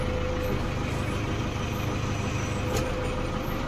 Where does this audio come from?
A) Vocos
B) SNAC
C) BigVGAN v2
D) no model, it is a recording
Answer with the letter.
D